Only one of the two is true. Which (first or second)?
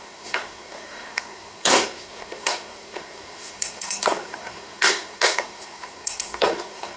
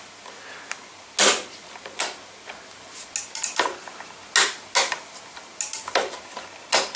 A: second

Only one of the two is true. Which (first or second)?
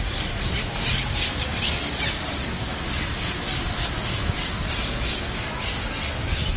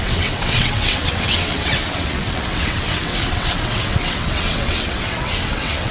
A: first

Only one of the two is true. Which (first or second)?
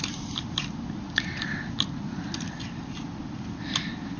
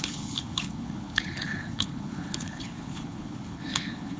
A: first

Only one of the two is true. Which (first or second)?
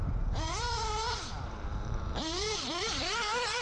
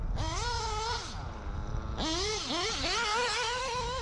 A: second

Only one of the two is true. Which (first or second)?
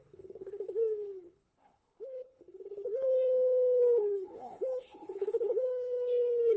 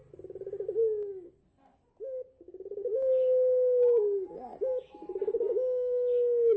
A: second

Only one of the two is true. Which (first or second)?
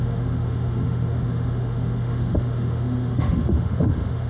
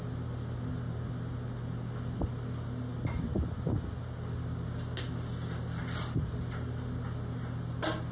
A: second